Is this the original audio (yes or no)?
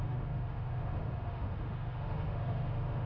no